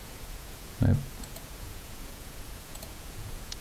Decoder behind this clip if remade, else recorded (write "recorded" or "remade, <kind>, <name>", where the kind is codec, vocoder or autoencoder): remade, vocoder, Vocos